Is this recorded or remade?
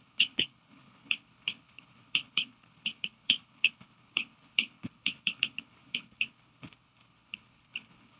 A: remade